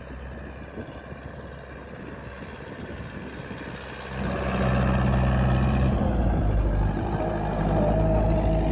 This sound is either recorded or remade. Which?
recorded